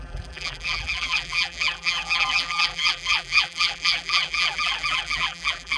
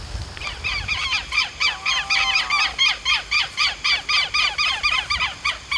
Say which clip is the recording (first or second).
second